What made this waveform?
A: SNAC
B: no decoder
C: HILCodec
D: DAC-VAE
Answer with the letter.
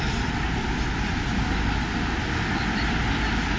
B